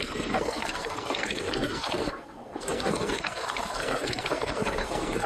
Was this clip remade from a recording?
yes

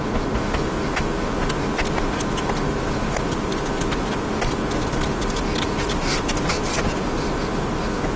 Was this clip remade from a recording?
no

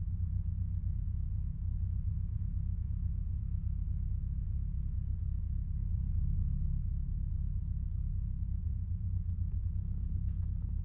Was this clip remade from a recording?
yes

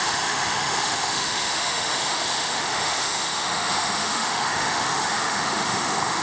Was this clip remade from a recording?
yes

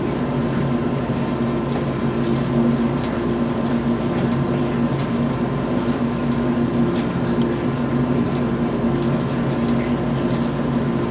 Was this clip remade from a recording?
no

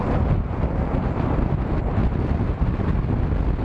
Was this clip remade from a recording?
no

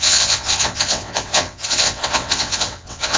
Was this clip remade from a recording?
yes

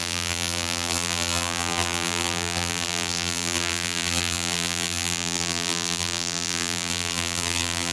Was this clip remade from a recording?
yes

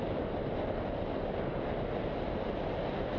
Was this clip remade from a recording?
yes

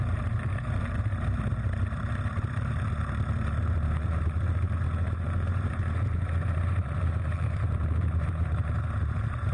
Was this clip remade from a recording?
yes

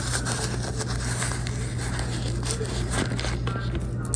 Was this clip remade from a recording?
no